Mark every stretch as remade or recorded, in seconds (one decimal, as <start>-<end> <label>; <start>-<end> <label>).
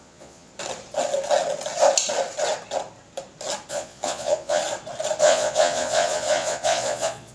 0.0-0.5 remade; 0.5-3.7 recorded; 3.7-4.6 remade; 4.6-5.2 recorded; 5.2-7.3 remade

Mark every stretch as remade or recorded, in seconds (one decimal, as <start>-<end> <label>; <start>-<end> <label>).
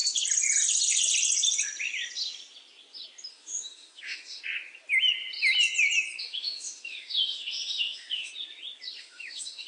0.0-3.3 recorded; 3.3-4.4 remade; 4.4-6.2 recorded; 6.2-8.3 remade; 8.3-9.0 recorded; 9.0-9.7 remade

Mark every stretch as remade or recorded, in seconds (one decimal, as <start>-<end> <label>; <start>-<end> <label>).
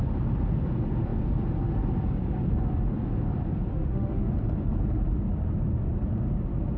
0.0-3.7 recorded; 3.7-4.3 remade; 4.3-6.8 recorded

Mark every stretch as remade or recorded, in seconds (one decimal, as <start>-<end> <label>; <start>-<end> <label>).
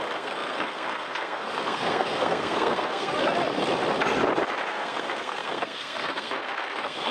0.0-3.1 remade; 3.1-4.7 recorded; 4.7-7.1 remade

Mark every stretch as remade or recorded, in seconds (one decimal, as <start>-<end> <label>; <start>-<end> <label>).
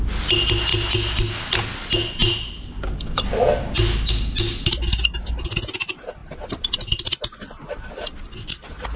0.0-9.0 recorded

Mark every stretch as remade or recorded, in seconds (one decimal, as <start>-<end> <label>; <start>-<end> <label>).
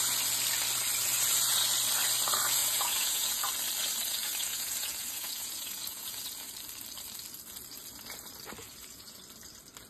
0.0-2.6 recorded; 2.6-3.4 remade; 3.4-4.1 recorded; 4.1-6.5 remade; 6.5-8.6 recorded; 8.6-9.2 remade; 9.2-9.9 recorded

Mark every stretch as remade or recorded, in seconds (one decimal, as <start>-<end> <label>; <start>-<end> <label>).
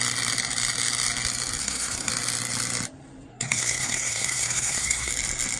0.0-1.6 recorded; 1.6-2.1 remade; 2.1-3.3 recorded; 3.3-5.1 remade; 5.1-5.6 recorded